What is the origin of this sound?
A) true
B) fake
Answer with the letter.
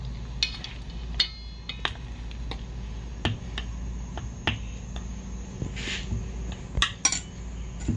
A